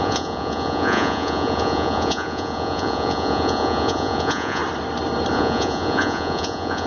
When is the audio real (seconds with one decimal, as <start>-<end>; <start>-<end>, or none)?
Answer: 4.6-5.3